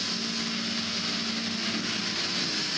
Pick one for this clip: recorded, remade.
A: recorded